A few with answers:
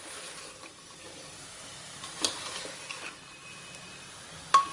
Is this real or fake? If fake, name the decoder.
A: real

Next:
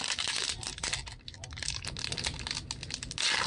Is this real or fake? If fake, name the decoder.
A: real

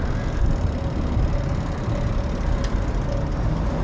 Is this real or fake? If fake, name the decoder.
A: real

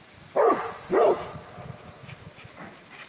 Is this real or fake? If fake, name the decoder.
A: real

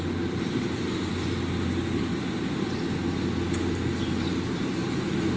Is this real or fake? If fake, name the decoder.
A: real